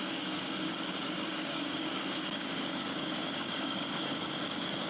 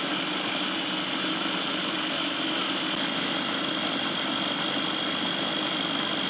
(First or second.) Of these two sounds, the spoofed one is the first